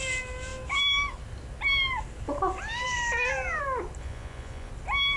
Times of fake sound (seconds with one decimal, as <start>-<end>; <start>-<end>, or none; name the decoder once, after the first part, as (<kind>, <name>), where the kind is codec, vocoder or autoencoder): 4.0-4.7 (vocoder, Vocos)